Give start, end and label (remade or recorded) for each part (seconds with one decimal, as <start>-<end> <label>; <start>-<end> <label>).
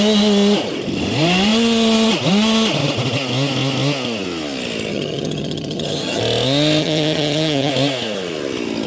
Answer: 0.0-4.9 recorded; 4.9-6.2 remade; 6.2-6.8 recorded; 6.8-7.7 remade; 7.7-8.9 recorded